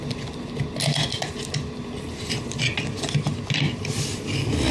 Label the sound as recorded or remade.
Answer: recorded